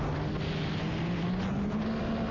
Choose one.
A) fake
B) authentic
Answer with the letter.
B